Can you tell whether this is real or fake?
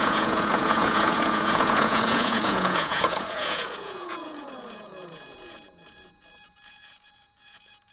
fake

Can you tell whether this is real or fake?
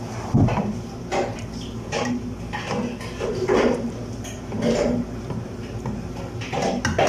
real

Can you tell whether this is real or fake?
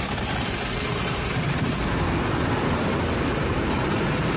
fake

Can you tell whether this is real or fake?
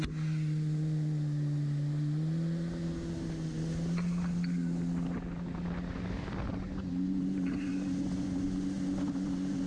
real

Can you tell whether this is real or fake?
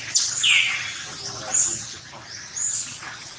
real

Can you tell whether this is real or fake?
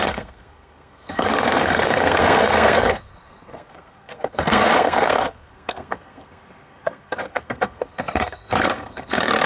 fake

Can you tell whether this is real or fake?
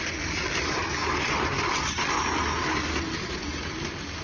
real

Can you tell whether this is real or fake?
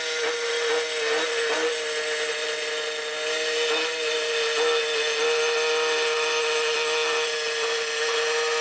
real